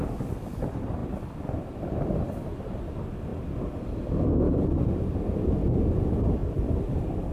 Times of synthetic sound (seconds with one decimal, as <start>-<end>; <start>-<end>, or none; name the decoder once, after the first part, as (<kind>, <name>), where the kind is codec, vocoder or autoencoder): 0.0-3.3 (vocoder, BigVGAN v2); 5.8-7.3

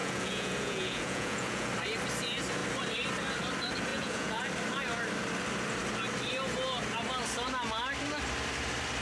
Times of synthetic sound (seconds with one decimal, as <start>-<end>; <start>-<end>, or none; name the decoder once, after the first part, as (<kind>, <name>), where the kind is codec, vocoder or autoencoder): 0.0-1.7 (vocoder, Vocos); 3.9-4.5

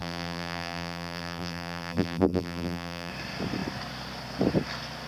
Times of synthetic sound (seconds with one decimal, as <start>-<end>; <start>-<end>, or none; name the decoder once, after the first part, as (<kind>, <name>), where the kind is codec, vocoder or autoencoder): 0.0-3.1 (vocoder, BigVGAN v2)

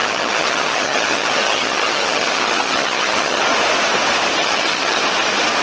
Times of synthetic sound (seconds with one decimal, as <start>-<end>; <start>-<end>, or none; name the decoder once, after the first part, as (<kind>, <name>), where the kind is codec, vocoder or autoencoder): 0.0-3.4 (vocoder, HiFi-GAN); 4.4-5.0

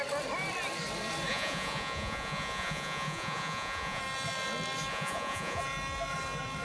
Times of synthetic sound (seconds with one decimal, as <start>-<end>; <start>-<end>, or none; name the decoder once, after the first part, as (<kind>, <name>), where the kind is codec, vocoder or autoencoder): 1.3-4.0 (vocoder, Vocos); 4.9-5.6

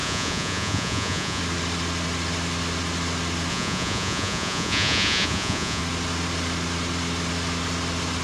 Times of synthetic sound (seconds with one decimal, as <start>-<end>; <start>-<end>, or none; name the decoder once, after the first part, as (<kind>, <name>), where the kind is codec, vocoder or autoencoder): 0.0-1.4 (vocoder, Vocos); 3.5-5.8

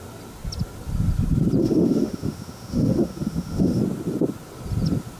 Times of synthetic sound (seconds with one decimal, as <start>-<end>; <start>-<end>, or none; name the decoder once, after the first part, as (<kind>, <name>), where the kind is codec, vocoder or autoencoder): 1.6-3.8 (autoencoder, DAC-VAE)

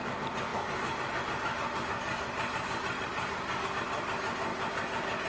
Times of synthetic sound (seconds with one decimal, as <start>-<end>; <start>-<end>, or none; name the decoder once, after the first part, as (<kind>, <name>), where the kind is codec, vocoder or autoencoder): 0.0-0.5 (vocoder, BigVGAN v2); 3.7-5.3